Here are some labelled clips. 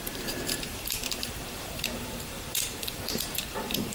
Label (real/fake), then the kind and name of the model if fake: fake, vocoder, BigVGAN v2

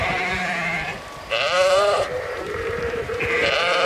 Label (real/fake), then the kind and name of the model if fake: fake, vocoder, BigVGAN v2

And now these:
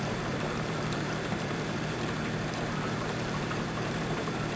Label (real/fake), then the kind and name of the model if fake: fake, vocoder, BigVGAN v2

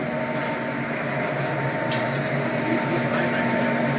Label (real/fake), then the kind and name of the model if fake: real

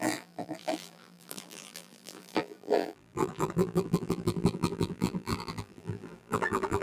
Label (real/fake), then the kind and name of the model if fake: fake, vocoder, BigVGAN v2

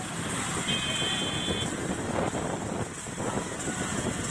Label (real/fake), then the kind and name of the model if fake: fake, vocoder, BigVGAN v2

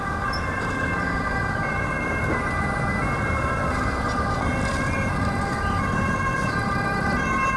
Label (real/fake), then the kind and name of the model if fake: fake, vocoder, BigVGAN v2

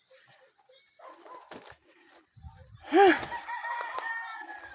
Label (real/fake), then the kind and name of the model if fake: real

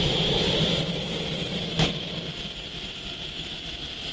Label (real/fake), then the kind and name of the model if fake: real